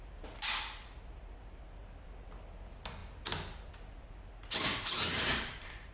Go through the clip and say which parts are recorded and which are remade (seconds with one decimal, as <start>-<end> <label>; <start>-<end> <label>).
0.0-4.7 recorded; 4.7-5.9 remade